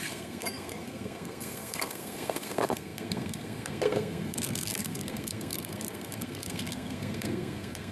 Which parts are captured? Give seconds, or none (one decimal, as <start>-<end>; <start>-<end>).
none